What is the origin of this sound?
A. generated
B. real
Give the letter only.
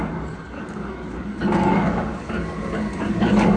A